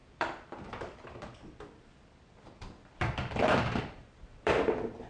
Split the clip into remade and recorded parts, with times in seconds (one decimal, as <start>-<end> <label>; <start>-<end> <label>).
0.0-5.1 remade